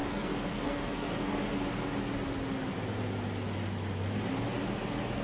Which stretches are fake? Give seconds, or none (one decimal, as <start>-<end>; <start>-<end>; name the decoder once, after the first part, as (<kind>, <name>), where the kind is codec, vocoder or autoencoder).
0.0-1.4 (codec, SNAC)